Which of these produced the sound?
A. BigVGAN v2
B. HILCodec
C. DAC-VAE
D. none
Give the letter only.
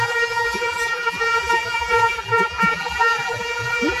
A